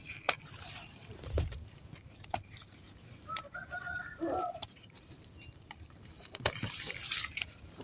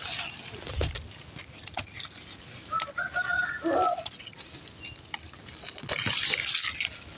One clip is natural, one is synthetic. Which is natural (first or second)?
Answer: second